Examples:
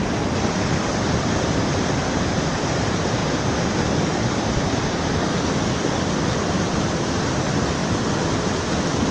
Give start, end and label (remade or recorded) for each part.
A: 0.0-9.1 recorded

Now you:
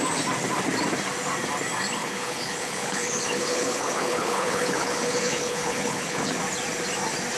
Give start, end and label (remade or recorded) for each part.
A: 0.0-2.0 recorded; 2.0-6.4 remade; 6.4-7.4 recorded